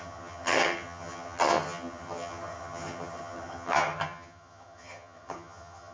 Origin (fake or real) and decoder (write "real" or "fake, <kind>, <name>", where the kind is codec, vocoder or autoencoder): fake, vocoder, HiFi-GAN